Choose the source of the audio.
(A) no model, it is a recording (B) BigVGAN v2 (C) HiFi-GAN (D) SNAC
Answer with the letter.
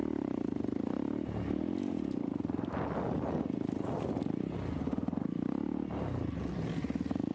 A